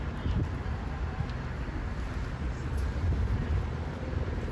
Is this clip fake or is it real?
real